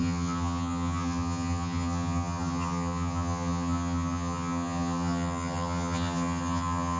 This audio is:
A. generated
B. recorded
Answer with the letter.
A